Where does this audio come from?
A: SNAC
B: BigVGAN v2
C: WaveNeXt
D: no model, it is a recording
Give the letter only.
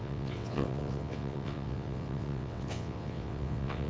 C